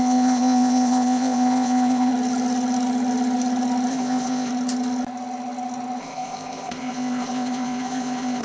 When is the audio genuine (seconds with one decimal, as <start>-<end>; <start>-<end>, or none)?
2.1-3.9; 4.5-6.0